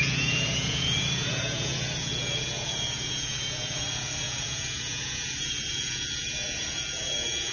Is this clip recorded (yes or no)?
no